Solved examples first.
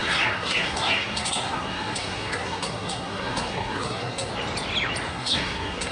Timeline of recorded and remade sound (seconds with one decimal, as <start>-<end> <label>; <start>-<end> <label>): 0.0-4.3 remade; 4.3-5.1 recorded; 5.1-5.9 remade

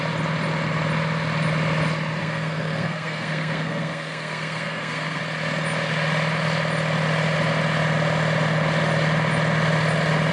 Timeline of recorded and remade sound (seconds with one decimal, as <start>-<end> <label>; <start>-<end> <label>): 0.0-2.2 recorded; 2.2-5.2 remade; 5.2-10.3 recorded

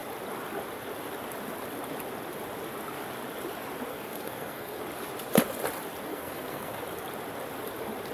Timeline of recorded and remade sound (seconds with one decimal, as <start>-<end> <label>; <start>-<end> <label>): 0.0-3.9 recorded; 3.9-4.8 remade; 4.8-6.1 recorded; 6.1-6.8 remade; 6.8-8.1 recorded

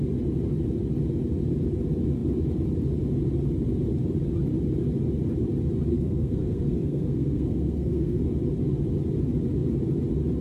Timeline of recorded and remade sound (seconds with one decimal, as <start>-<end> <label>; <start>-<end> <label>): 0.0-5.9 recorded; 5.9-8.2 remade; 8.2-10.4 recorded

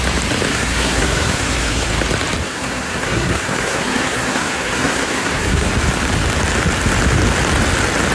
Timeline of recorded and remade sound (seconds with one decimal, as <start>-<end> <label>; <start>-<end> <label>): 0.0-0.5 recorded; 0.5-1.9 remade; 1.9-2.4 recorded; 2.4-5.7 remade; 5.7-8.1 recorded

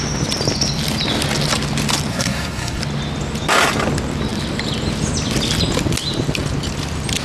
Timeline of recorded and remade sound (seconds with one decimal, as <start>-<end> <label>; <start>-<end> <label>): 0.0-2.1 recorded; 2.1-2.8 remade; 2.8-7.2 recorded

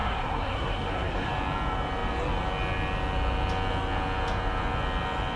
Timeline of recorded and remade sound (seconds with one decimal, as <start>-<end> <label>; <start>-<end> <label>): 0.0-1.3 remade; 1.3-5.4 recorded

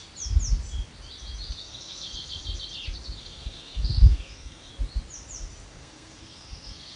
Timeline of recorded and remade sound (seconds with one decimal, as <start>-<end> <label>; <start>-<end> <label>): 0.0-1.6 recorded; 1.6-2.4 remade; 2.4-3.2 recorded; 3.2-4.7 remade; 4.7-5.7 recorded; 5.7-7.0 remade